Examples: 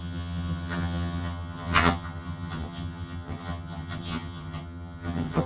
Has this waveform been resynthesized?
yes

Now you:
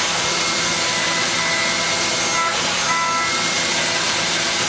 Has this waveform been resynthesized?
no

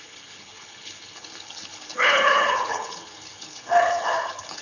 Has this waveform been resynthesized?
yes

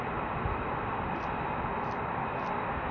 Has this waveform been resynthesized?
no